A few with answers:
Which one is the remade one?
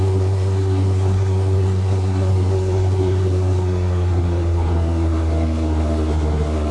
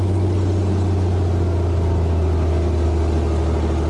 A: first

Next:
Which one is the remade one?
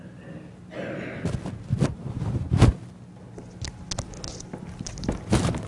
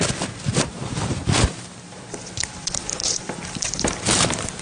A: second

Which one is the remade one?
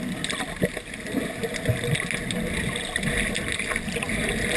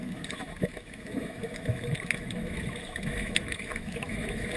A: second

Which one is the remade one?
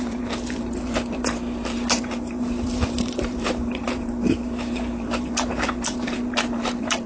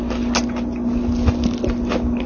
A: first